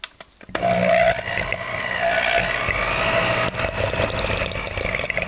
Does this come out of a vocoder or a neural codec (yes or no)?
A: no